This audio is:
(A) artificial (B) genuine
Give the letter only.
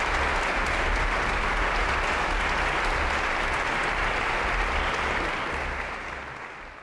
B